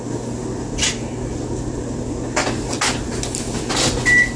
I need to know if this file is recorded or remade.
recorded